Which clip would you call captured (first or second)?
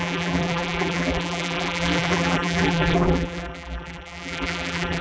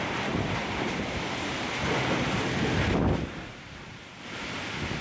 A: second